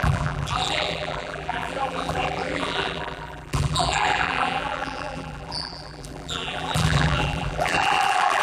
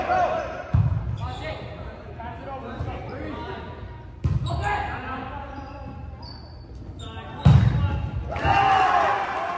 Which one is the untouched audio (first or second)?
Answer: second